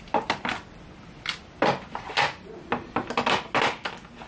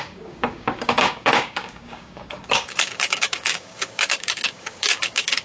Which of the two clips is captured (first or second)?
first